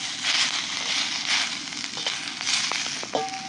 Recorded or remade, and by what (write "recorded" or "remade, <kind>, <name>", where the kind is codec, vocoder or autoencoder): recorded